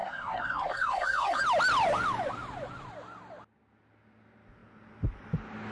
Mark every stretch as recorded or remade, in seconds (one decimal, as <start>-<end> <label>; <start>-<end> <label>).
0.0-1.4 remade; 1.4-5.7 recorded